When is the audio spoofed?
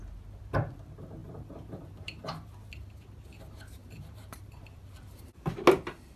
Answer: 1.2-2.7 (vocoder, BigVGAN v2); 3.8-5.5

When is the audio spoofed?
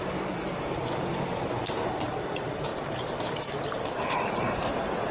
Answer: 0.0-5.1 (vocoder, BigVGAN v2)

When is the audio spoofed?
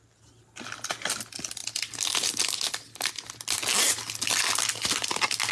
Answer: none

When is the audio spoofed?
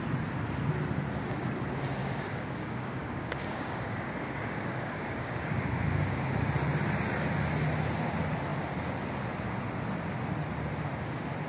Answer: 2.0-6.3 (codec, DAC)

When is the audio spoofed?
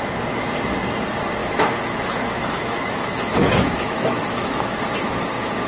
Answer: 1.4-4.8 (autoencoder, DAC-VAE)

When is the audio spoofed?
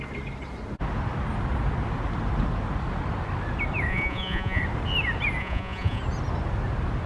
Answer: 3.9-4.6 (vocoder, Vocos); 5.4-6.0